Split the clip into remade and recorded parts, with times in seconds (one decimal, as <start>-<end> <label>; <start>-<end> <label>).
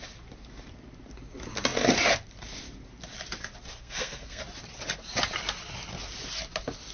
0.0-3.7 recorded; 3.7-4.4 remade; 4.4-6.9 recorded